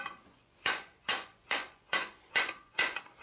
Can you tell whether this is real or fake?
fake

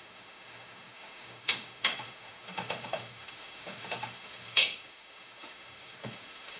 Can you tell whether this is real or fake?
fake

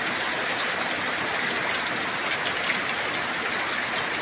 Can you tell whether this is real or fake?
real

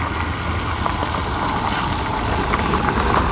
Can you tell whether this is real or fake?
real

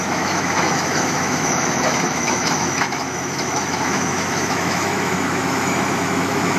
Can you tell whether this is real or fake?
fake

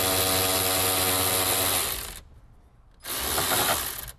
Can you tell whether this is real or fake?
real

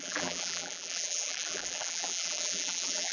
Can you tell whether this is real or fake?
fake